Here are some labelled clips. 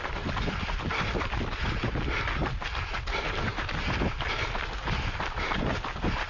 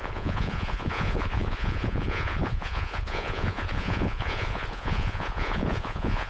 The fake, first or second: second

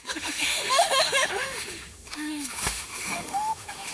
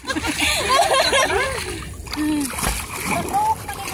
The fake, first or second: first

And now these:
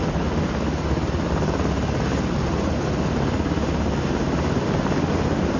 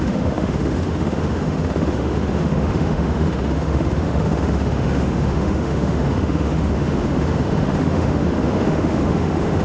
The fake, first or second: second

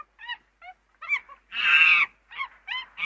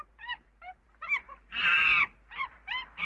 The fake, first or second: second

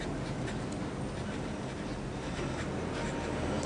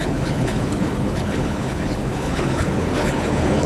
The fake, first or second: second